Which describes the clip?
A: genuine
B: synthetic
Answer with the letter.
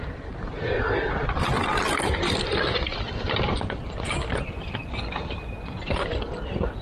A